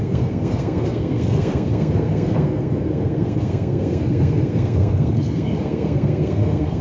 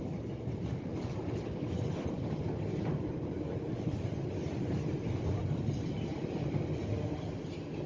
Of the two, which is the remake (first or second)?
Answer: first